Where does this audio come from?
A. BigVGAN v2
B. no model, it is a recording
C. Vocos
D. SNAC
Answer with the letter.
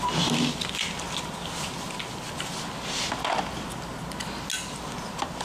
B